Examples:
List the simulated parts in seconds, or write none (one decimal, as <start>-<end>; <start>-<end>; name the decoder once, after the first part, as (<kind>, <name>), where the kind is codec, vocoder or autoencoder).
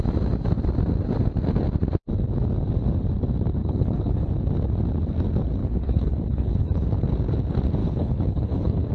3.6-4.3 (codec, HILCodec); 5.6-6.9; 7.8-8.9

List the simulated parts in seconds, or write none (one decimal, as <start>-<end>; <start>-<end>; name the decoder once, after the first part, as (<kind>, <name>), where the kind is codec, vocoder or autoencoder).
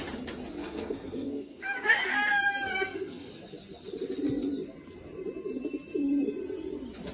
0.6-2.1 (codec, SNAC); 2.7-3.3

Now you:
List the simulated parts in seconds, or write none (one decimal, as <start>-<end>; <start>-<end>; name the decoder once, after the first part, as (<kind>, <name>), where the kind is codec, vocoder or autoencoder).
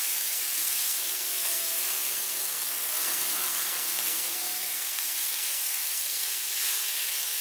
0.0-7.4 (codec, SNAC)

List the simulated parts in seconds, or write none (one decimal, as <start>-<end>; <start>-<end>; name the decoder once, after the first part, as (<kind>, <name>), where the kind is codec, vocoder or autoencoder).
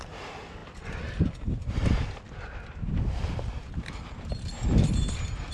none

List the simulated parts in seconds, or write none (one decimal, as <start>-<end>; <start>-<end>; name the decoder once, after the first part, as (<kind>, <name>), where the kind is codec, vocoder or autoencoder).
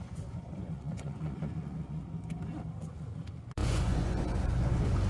0.0-2.0 (vocoder, Vocos); 2.9-5.1